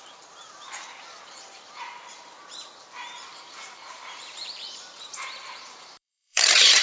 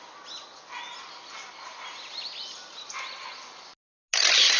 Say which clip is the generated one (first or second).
first